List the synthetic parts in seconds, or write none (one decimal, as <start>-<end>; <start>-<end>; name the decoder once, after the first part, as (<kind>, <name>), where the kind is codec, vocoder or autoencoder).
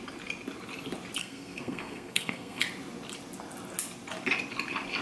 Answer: 1.2-2.6 (codec, SNAC)